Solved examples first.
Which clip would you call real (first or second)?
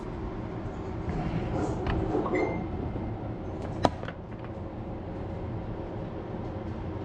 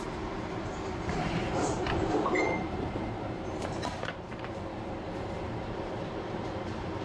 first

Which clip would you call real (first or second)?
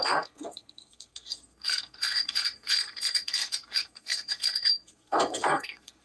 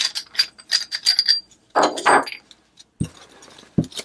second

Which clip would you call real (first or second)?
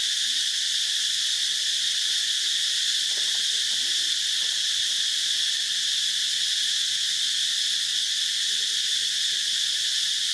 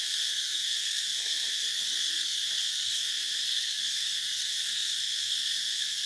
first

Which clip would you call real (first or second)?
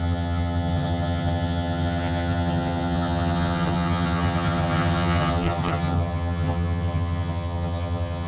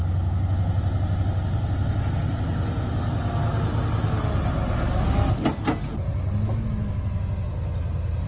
second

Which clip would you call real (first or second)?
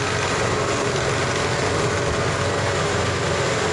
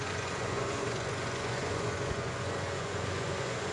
first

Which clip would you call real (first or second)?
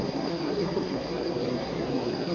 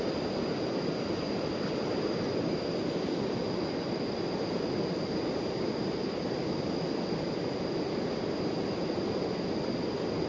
second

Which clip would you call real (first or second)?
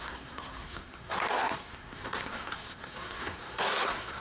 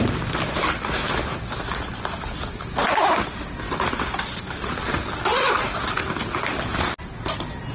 second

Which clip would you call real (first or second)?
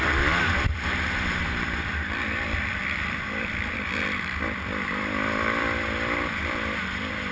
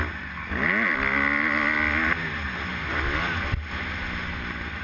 second